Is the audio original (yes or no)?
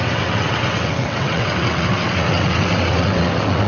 no